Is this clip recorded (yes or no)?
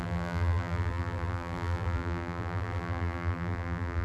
no